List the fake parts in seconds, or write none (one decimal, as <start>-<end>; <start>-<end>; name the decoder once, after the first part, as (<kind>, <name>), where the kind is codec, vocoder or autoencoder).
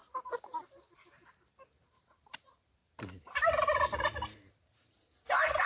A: 0.0-5.7 (vocoder, BigVGAN v2)